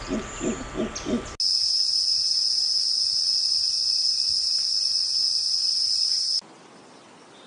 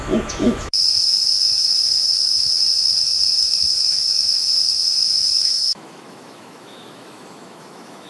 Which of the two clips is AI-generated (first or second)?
second